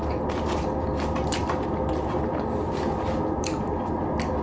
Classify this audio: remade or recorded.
recorded